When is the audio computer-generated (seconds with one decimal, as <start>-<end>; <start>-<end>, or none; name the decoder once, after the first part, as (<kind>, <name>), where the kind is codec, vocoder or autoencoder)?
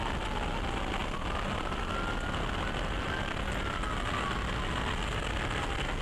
none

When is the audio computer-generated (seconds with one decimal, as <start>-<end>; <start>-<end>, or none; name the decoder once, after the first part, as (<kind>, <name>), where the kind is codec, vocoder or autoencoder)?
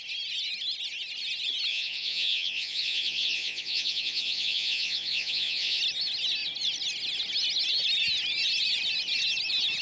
1.7-5.8 (vocoder, Vocos)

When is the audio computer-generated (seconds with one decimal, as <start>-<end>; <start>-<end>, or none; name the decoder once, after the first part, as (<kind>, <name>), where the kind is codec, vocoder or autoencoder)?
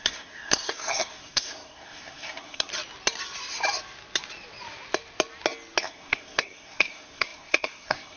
0.0-2.7 (codec, SNAC); 5.8-8.2